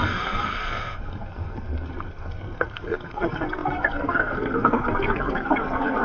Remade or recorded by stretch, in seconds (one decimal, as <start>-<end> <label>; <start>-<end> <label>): 0.0-6.0 remade